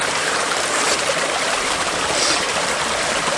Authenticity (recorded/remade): remade